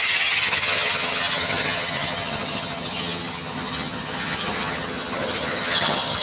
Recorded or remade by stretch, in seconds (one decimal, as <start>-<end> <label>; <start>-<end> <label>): 0.0-6.2 remade